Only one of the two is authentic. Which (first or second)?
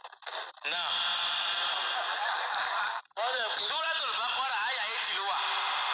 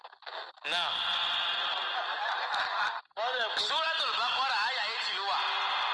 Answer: second